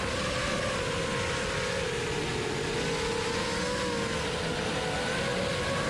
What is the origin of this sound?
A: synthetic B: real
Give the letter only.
B